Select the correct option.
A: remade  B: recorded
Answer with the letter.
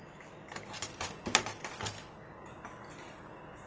B